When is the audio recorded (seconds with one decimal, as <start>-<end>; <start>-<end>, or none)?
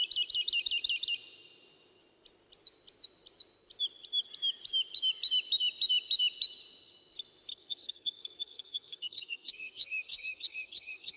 0.0-7.5